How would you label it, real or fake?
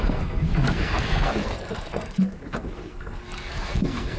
fake